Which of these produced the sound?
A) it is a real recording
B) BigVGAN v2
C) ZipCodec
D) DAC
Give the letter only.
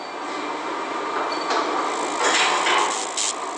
A